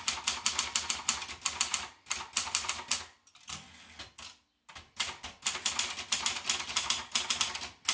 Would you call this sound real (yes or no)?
yes